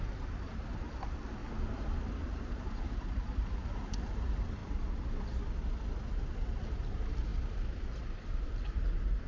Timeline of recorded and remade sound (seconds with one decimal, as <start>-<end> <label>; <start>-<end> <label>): 0.0-1.4 remade; 1.4-2.3 recorded; 2.3-4.6 remade; 4.6-6.1 recorded; 6.1-7.3 remade; 7.3-8.4 recorded; 8.4-9.3 remade